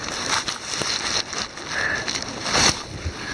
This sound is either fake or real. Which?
real